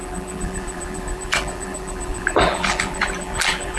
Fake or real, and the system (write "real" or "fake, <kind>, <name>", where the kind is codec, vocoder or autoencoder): fake, vocoder, BigVGAN v2